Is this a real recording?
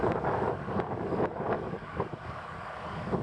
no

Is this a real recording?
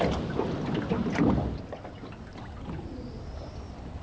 yes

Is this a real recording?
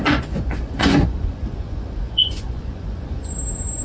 no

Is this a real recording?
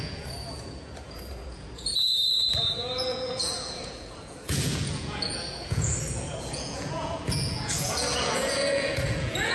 no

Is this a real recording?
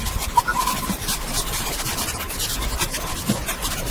yes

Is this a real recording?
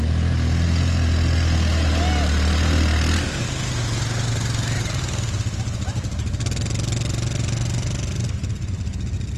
yes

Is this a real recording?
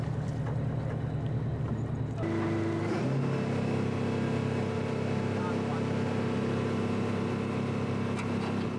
yes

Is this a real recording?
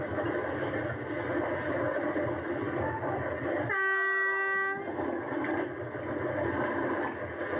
yes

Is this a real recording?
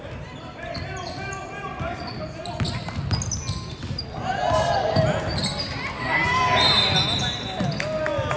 yes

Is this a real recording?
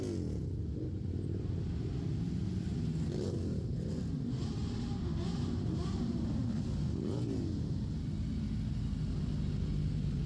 yes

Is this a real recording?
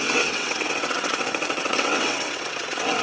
no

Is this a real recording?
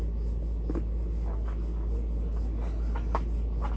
yes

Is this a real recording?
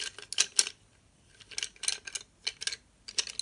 yes